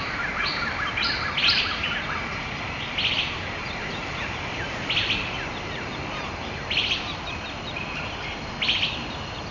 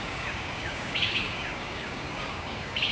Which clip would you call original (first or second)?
first